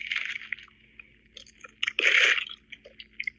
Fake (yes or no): no